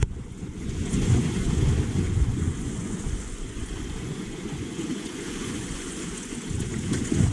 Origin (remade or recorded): remade